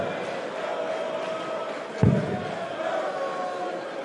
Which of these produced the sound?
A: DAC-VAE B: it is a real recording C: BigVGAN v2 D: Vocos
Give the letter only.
B